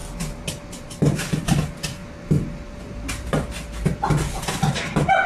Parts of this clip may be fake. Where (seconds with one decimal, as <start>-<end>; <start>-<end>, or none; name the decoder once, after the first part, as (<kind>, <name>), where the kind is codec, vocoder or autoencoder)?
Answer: 0.0-5.3 (vocoder, BigVGAN v2)